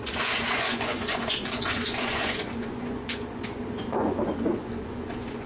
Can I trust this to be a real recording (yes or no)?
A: no